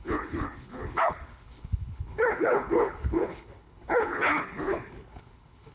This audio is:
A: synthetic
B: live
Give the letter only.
A